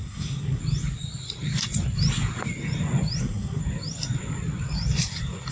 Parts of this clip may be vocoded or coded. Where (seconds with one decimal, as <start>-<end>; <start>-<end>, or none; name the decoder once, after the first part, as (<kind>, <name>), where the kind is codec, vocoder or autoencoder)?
0.0-0.6 (codec, SNAC); 3.2-3.6